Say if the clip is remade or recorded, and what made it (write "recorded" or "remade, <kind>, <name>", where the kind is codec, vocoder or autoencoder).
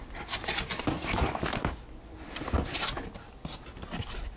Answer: recorded